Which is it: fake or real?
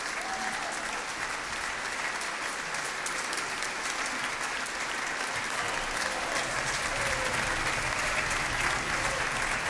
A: real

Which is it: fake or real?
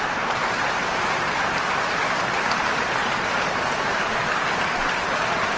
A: fake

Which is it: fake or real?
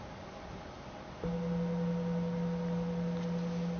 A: real